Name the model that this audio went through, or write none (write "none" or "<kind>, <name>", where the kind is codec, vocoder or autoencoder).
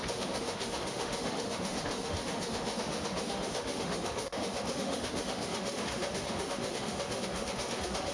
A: autoencoder, DAC-VAE